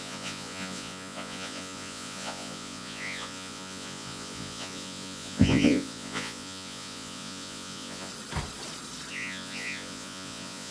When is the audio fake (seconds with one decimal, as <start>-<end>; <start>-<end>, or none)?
0.0-8.1; 9.1-10.7